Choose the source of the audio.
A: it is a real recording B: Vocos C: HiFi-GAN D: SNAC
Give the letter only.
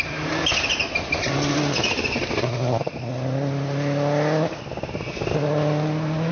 A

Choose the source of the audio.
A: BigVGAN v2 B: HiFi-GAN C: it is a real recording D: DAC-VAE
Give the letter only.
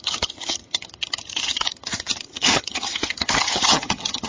B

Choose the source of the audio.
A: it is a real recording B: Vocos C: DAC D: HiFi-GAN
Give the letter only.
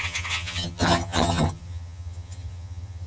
D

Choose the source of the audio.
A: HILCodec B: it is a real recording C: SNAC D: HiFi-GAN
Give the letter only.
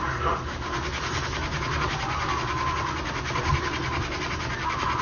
B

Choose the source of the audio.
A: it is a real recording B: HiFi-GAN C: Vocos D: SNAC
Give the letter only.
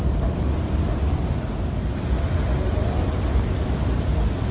A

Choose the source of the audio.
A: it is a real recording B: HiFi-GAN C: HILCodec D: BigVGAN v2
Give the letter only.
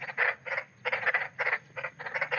A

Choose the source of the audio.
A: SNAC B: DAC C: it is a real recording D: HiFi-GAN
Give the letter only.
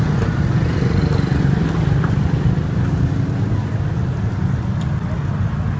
C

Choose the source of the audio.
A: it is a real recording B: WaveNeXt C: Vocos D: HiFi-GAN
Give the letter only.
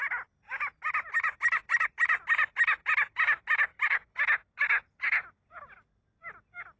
A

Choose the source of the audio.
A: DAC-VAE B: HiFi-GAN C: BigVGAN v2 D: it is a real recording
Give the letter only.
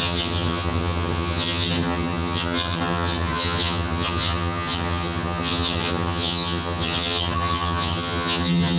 B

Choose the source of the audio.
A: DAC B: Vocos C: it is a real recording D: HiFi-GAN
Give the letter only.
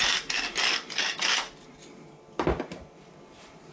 C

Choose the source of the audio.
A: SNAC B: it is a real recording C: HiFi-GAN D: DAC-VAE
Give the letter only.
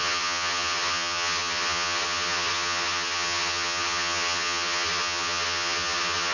C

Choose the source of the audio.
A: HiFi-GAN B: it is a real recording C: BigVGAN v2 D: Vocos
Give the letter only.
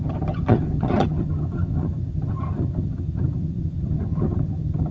A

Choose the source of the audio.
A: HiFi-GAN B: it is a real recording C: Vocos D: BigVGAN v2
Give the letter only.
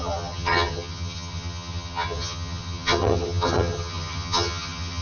A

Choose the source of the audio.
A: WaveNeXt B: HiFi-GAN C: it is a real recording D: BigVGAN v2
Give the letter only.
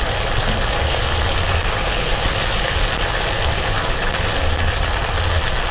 C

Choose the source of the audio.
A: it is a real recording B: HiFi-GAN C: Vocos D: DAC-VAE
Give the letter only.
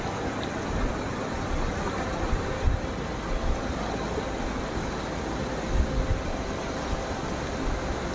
A